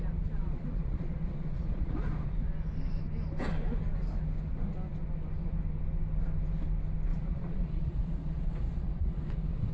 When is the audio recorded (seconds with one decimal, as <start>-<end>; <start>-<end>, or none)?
0.0-0.4; 2.3-7.1